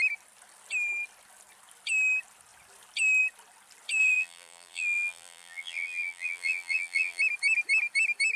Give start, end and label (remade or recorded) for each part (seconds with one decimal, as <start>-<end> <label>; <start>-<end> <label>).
0.0-4.0 recorded; 4.0-7.2 remade; 7.2-8.4 recorded